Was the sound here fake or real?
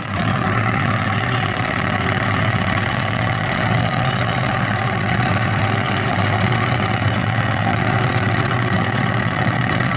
fake